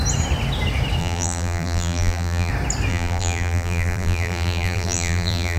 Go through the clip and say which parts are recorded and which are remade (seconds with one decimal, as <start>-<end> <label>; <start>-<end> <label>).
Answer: 0.0-1.0 recorded; 1.0-2.5 remade; 2.5-2.9 recorded; 2.9-5.6 remade